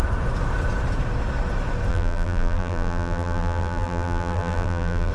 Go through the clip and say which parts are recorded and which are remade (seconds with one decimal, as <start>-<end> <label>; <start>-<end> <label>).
0.0-1.9 recorded; 1.9-5.1 remade